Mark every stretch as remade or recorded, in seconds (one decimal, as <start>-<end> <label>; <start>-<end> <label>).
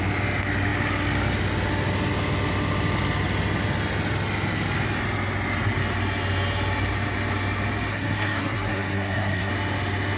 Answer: 0.0-7.9 recorded; 7.9-9.5 remade; 9.5-10.2 recorded